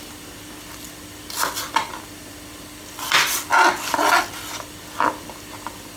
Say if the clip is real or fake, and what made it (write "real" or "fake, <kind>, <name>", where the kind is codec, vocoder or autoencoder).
real